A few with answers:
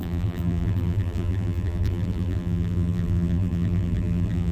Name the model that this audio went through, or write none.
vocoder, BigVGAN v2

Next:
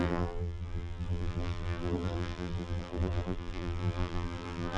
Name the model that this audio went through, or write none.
vocoder, BigVGAN v2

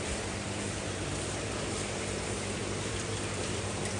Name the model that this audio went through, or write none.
vocoder, BigVGAN v2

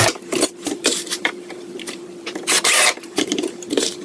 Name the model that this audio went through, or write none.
vocoder, BigVGAN v2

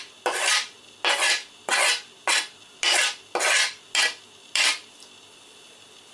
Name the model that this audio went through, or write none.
none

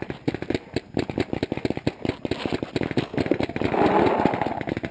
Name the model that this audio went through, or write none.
none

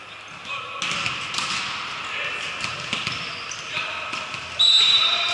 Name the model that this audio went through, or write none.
none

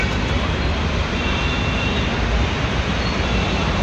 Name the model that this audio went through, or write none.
none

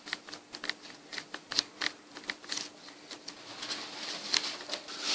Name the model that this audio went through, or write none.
none